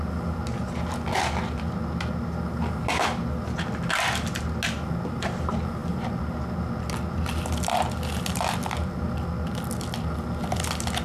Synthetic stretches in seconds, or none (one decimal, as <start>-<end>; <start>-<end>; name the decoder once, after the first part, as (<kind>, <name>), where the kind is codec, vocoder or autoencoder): none